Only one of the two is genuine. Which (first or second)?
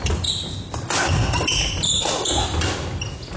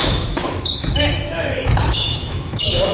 first